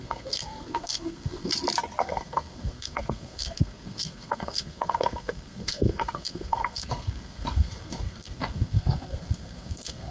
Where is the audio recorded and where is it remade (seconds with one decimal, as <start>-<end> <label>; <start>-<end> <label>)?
0.0-1.5 remade; 1.5-2.0 recorded; 2.0-10.1 remade